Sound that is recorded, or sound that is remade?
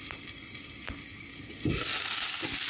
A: recorded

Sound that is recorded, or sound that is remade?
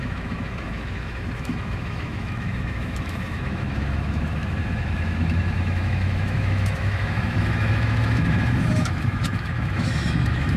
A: remade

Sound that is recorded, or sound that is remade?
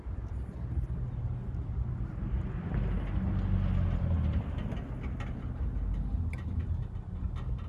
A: recorded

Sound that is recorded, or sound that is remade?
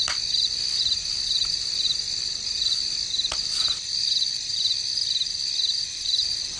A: remade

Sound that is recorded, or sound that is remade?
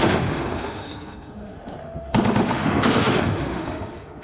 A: remade